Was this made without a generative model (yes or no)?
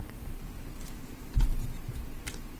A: no